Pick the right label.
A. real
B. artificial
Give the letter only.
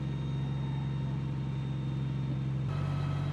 A